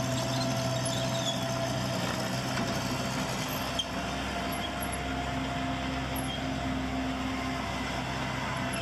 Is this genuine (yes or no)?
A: yes